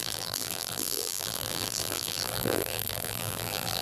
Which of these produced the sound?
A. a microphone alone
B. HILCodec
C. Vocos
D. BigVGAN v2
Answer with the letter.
D